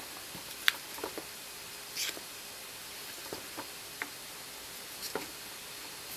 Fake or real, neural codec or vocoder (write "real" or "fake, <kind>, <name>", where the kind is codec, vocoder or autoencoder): real